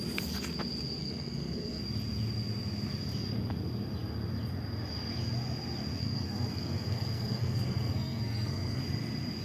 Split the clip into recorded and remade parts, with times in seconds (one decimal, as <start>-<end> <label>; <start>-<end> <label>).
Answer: 0.0-1.0 recorded; 1.0-1.8 remade; 1.8-6.0 recorded; 6.0-8.8 remade; 8.8-9.4 recorded